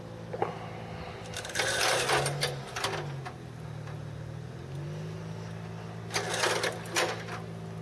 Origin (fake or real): real